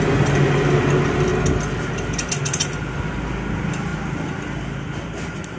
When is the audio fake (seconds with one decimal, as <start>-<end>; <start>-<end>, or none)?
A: none